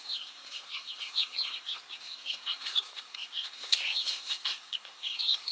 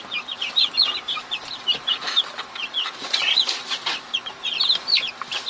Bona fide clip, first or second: second